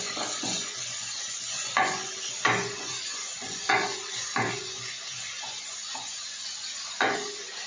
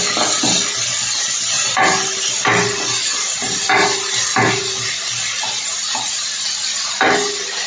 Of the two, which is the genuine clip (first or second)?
second